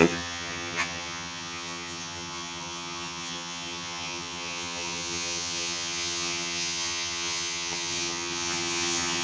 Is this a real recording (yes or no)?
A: no